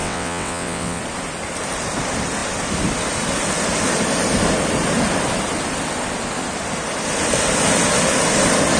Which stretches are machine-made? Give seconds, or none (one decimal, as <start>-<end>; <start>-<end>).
0.0-1.0